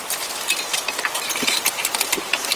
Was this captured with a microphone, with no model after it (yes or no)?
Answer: yes